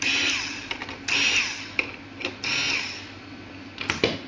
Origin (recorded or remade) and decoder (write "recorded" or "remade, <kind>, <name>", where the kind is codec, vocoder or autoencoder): recorded